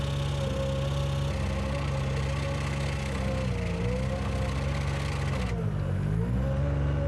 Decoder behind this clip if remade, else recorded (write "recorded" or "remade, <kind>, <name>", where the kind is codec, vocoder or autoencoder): recorded